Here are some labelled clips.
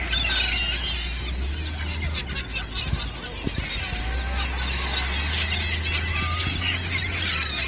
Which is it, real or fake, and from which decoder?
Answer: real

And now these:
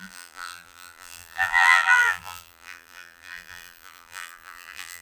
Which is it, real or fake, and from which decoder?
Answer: fake, vocoder, BigVGAN v2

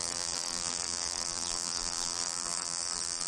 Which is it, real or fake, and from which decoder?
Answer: fake, vocoder, BigVGAN v2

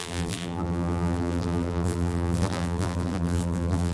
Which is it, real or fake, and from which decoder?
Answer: fake, vocoder, BigVGAN v2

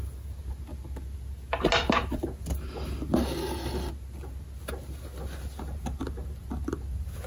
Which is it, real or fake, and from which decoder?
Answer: real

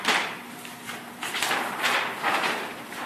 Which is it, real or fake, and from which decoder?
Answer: fake, vocoder, BigVGAN v2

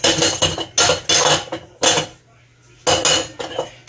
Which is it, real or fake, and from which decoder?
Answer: real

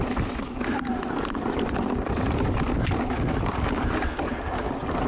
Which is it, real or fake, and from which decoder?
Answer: real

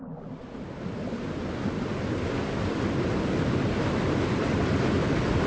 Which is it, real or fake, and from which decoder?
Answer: real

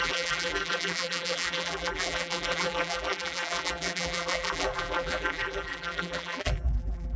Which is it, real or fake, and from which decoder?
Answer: fake, vocoder, BigVGAN v2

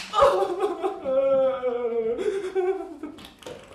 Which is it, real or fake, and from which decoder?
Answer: fake, vocoder, BigVGAN v2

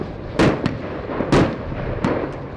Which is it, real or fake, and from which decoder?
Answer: real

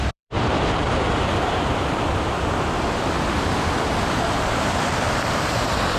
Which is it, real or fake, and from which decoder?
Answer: fake, vocoder, BigVGAN v2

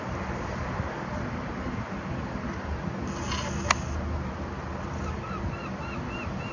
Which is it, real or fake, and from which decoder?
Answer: real